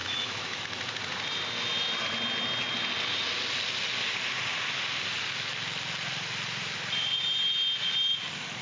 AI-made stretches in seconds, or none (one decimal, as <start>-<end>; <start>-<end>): 0.0-0.6